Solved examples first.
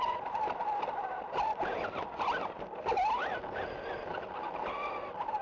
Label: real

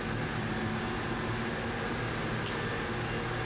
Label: real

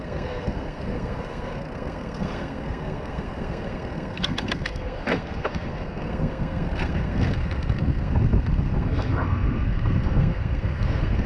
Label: fake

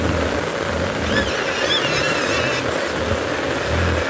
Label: real